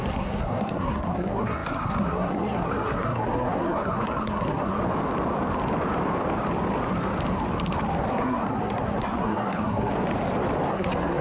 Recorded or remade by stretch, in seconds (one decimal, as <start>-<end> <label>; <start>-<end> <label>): 0.0-4.8 remade; 4.8-8.1 recorded; 8.1-9.9 remade; 9.9-10.7 recorded; 10.7-11.2 remade